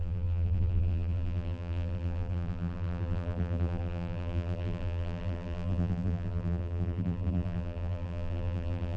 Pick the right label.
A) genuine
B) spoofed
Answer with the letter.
B